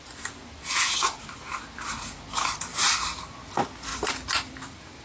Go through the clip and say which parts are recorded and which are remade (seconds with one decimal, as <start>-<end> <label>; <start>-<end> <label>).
0.0-5.0 recorded